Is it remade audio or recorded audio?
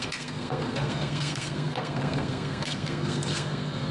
remade